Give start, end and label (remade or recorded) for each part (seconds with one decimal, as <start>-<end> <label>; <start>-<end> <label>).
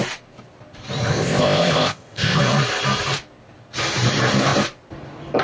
0.0-1.1 recorded; 1.1-2.4 remade; 2.4-5.4 recorded